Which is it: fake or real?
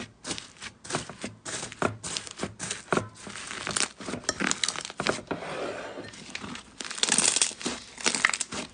real